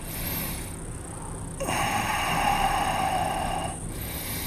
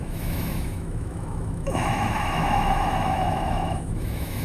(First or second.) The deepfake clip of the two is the second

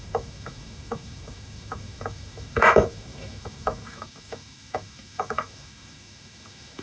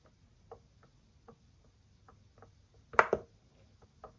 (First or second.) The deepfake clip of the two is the first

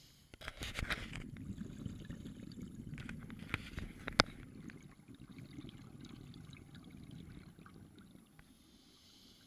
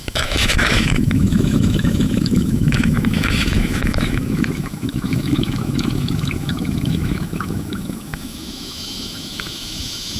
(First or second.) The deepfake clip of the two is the second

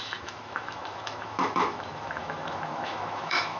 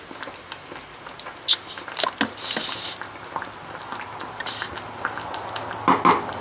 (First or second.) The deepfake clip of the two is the first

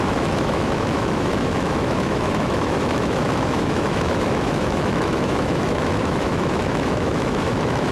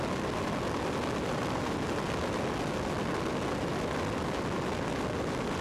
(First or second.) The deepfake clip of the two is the first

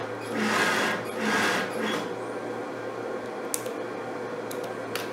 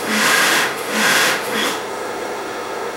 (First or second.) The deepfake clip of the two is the second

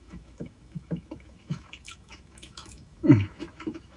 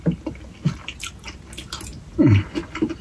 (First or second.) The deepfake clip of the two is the first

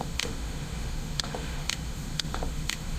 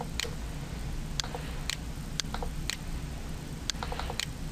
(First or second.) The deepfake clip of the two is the first